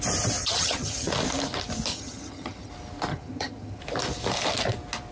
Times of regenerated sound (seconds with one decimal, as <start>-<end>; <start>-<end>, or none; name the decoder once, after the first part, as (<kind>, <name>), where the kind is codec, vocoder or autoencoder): 0.4-1.1 (vocoder, HiFi-GAN); 1.9-2.7; 3.1-3.8